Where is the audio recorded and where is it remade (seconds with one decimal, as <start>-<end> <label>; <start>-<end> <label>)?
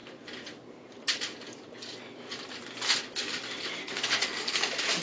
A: 0.0-3.8 recorded; 3.8-4.6 remade; 4.6-5.0 recorded